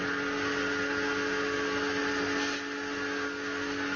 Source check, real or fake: real